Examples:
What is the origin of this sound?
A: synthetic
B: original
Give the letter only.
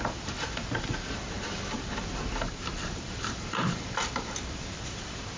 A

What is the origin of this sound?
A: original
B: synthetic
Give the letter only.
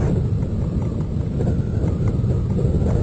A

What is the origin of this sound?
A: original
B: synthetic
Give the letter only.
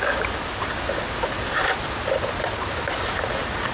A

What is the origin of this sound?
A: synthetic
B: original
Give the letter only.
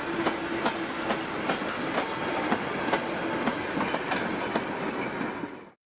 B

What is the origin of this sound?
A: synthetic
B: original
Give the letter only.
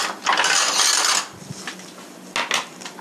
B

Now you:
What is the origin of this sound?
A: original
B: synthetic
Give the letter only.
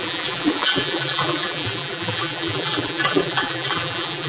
B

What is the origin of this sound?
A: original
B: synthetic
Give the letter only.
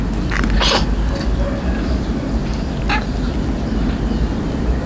A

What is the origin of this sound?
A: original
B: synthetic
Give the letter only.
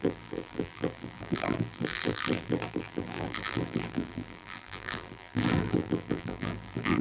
B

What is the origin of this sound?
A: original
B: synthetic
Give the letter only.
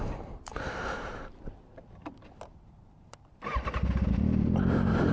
B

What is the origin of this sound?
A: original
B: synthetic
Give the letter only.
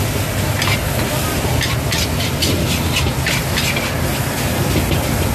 A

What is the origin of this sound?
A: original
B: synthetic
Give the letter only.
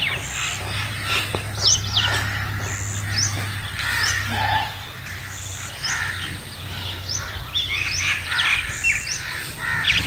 A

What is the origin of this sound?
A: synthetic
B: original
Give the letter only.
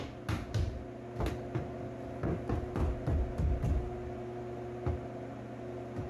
B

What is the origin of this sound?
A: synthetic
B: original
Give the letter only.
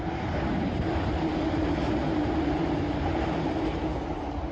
A